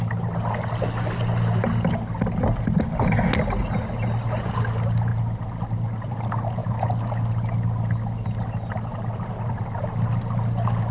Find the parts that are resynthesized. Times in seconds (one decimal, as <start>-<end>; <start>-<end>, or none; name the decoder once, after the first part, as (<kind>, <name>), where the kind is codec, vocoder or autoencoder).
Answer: none